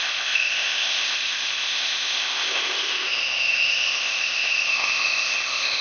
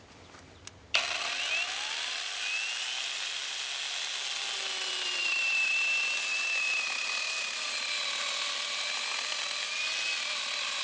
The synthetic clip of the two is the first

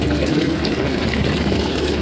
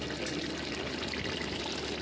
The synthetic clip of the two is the first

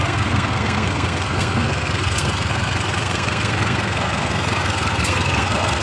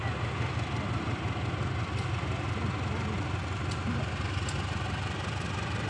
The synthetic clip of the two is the first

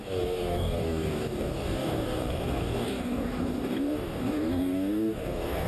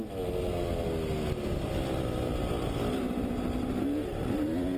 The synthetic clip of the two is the first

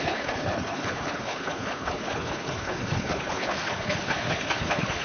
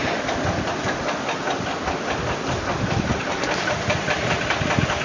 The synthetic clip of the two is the first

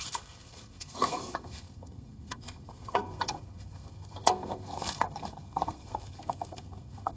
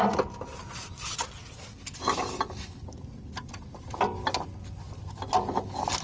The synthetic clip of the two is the first